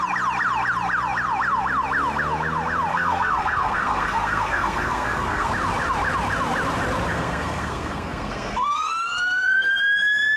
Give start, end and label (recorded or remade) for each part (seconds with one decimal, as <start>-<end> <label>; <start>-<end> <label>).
0.0-2.9 recorded; 2.9-5.5 remade; 5.5-7.1 recorded; 7.1-9.7 remade; 9.7-10.4 recorded